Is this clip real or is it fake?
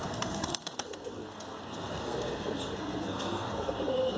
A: fake